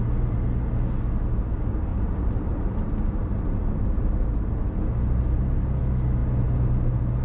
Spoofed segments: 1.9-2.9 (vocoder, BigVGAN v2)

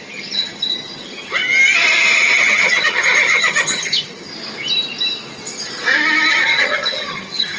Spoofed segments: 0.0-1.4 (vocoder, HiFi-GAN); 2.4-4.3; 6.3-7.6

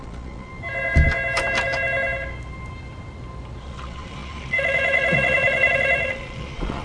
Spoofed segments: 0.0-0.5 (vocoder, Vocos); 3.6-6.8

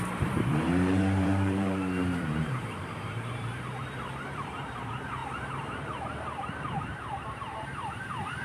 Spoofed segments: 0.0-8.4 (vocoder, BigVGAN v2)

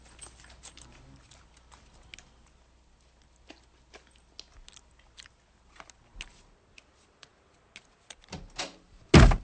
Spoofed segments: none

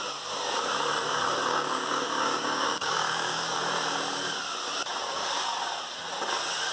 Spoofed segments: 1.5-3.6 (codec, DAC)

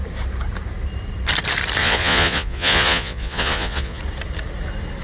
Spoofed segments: 1.8-4.0 (vocoder, Vocos)

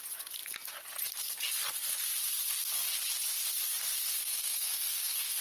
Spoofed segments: 4.1-5.4 (codec, SNAC)